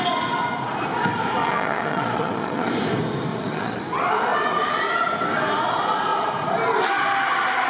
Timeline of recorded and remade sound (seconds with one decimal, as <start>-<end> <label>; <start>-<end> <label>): 0.0-1.4 recorded; 1.4-2.7 remade; 2.7-3.3 recorded; 3.3-3.8 remade; 3.8-7.7 recorded

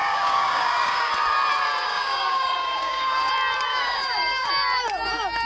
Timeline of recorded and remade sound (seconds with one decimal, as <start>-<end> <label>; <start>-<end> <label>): 0.0-1.1 remade; 1.1-1.9 recorded; 1.9-3.3 remade; 3.3-3.7 recorded; 3.7-4.5 remade; 4.5-5.5 recorded

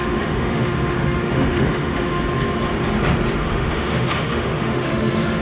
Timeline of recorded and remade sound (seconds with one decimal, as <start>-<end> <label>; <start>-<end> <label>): 0.0-2.2 remade; 2.2-3.4 recorded; 3.4-5.4 remade

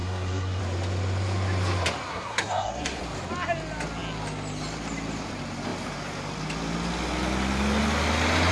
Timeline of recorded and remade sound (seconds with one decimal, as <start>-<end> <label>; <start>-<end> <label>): 0.0-0.6 remade; 0.6-2.1 recorded; 2.1-3.0 remade; 3.0-8.5 recorded